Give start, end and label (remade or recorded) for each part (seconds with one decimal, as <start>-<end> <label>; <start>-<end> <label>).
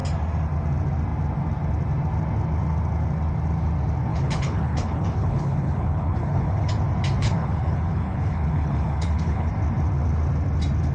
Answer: 0.0-4.1 recorded; 4.1-6.7 remade; 6.7-7.2 recorded; 7.2-9.5 remade; 9.5-10.9 recorded